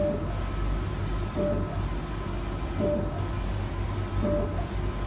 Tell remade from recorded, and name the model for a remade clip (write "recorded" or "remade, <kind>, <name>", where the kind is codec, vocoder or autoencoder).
recorded